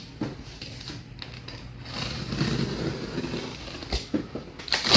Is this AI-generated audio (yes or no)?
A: no